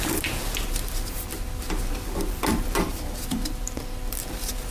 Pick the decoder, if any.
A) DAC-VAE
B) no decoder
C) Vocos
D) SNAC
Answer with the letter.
B